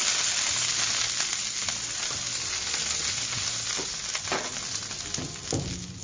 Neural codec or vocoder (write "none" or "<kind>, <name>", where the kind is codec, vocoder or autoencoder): none